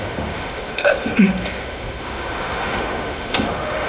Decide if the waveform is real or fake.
fake